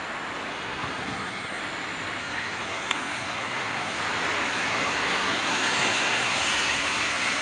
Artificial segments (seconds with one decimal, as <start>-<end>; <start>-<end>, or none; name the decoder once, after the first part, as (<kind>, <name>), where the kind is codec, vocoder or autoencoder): 0.5-1.6 (codec, SNAC); 2.2-4.0; 4.5-7.4